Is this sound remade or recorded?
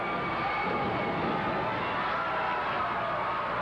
recorded